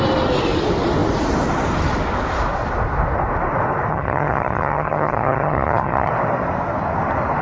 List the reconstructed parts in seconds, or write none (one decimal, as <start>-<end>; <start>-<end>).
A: 3.9-6.1